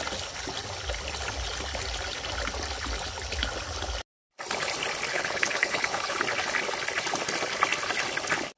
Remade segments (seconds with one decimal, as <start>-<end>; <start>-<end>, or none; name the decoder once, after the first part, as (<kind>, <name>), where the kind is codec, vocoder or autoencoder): 5.1-6.2 (codec, HILCodec)